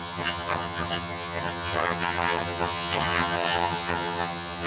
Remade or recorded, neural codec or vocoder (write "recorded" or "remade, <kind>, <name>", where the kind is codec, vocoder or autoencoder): remade, vocoder, HiFi-GAN